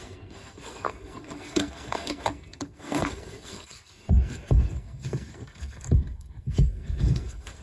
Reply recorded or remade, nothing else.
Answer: remade